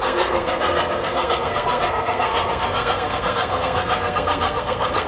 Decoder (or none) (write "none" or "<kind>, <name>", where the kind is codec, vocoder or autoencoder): codec, SNAC